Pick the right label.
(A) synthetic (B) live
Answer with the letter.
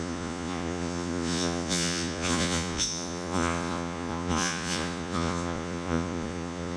A